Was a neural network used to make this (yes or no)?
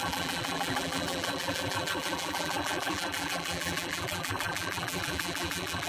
yes